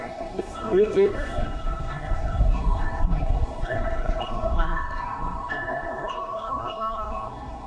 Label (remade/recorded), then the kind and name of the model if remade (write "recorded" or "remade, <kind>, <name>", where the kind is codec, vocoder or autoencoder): remade, codec, SNAC